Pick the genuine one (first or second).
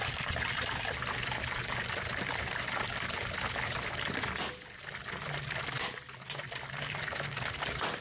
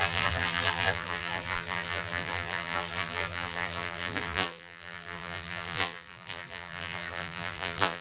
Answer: first